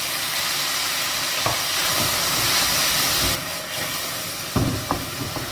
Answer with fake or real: real